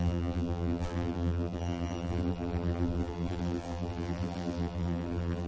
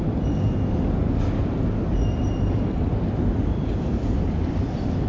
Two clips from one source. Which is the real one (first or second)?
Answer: second